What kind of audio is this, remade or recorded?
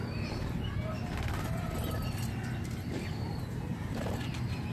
recorded